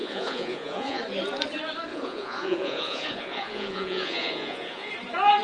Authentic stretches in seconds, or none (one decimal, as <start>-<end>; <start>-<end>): 1.0-1.9; 4.9-5.4